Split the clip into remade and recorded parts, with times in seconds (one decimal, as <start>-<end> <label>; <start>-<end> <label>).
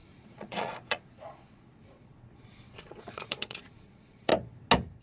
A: 0.0-4.3 remade; 4.3-5.0 recorded